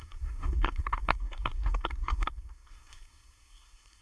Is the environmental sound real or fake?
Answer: fake